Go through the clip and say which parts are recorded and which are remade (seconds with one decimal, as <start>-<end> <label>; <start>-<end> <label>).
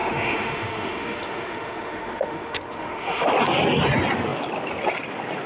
0.0-3.3 remade; 3.3-5.5 recorded